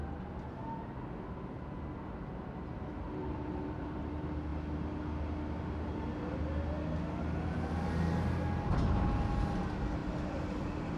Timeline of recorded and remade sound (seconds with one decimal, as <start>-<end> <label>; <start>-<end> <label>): 0.0-3.2 recorded; 3.2-4.1 remade; 4.1-11.0 recorded